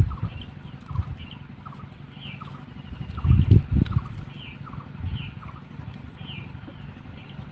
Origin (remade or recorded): recorded